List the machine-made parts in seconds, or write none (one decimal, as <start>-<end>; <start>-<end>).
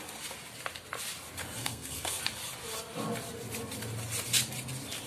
1.6-2.2